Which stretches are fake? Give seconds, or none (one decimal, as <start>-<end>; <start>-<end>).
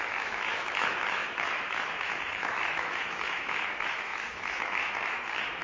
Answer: 0.0-5.6